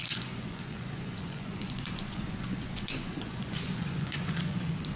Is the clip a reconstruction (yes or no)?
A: yes